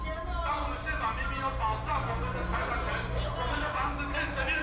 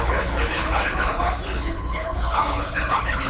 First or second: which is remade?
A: second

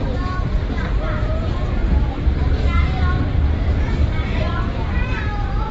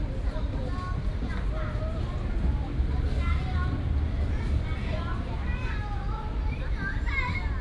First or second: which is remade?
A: first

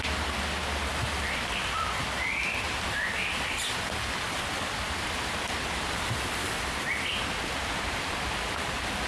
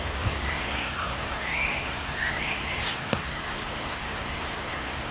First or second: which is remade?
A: second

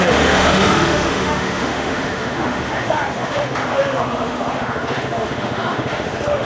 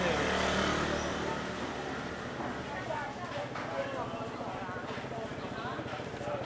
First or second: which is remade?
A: first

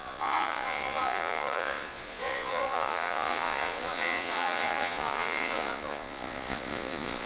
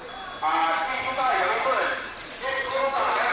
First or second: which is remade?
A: first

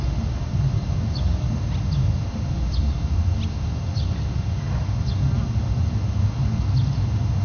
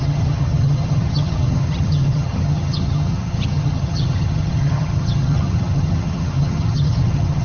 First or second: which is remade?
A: second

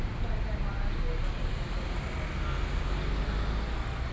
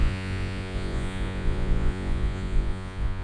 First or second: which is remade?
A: second